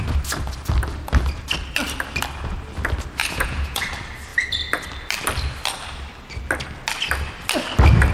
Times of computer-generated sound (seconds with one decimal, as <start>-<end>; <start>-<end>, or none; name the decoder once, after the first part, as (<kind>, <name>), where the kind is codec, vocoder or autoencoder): 3.2-3.8 (vocoder, Vocos)